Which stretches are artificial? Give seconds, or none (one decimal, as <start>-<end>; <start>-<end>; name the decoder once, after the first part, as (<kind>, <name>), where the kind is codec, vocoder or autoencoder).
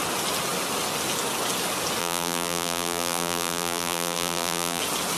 2.0-4.8 (vocoder, BigVGAN v2)